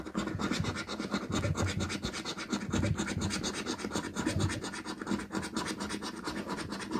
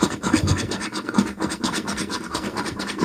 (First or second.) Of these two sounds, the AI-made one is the second